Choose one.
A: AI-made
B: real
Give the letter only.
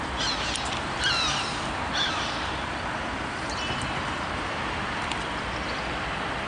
A